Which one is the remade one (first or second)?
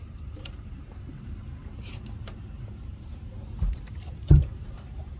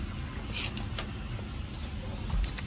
first